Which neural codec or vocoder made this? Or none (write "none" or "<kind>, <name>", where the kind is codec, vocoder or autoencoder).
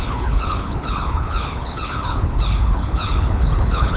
codec, HILCodec